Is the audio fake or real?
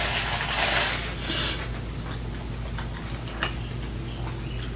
real